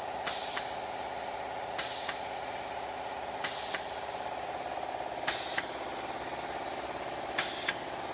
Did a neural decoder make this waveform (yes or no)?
no